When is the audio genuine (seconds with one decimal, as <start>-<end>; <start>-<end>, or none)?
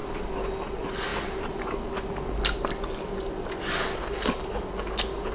0.0-5.3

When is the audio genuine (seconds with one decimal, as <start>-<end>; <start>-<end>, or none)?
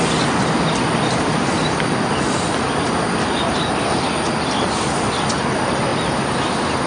0.0-6.9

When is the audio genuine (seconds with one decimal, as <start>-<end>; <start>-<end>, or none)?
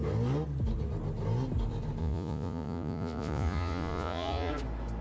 0.0-2.0; 4.5-5.0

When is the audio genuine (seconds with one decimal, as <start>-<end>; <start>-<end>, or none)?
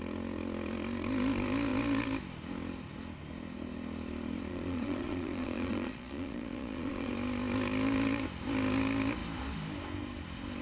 0.0-4.5; 7.1-10.6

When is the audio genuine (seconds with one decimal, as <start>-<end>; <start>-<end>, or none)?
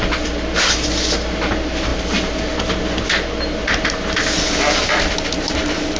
0.0-6.0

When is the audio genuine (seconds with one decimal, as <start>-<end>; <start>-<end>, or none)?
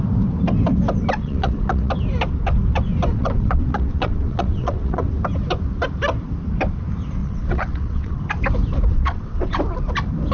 0.0-1.2; 1.9-3.1; 5.1-7.2; 8.2-8.9; 9.6-10.3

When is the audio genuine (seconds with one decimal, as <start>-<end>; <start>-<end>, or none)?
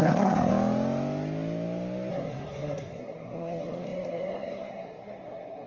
0.5-2.1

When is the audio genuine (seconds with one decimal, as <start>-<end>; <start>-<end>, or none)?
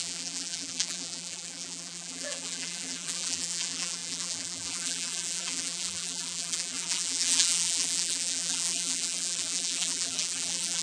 none